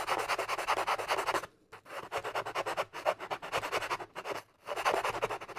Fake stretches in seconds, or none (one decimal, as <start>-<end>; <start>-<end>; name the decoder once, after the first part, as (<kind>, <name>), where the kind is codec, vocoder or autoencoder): none